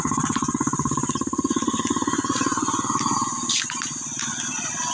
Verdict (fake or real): real